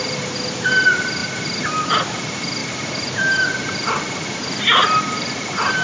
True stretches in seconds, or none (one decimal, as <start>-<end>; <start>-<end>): 0.0-5.8